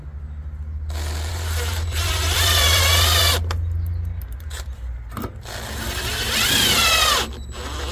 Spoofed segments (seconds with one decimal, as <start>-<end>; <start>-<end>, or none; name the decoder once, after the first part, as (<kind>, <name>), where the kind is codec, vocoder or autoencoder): 1.3-3.2 (vocoder, BigVGAN v2)